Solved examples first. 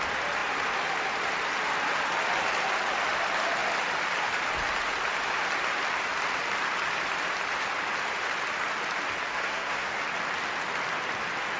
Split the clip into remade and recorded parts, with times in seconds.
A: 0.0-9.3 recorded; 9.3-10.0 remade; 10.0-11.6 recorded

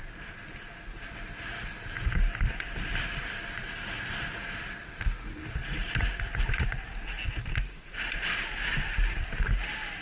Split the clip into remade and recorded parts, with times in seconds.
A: 0.0-10.0 recorded

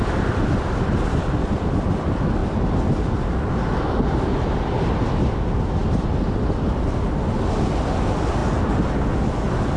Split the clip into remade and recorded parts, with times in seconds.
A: 0.0-9.8 recorded

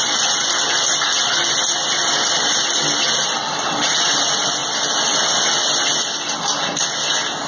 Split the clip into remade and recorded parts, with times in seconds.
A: 0.0-7.5 recorded

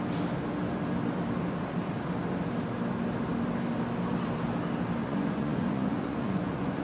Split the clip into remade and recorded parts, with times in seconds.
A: 0.0-5.0 recorded; 5.0-6.8 remade